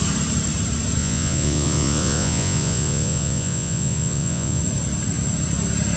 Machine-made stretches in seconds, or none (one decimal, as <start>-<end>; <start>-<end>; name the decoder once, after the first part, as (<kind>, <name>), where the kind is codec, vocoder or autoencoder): 1.0-4.6 (vocoder, Vocos)